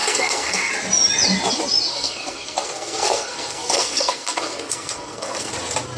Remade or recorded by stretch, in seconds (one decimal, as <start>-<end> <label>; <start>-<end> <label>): 0.0-0.7 remade; 0.7-1.9 recorded; 1.9-5.5 remade; 5.5-6.0 recorded